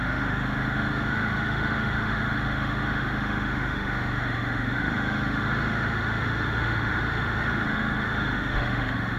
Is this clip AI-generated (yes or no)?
yes